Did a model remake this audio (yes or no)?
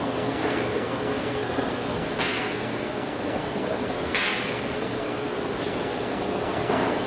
yes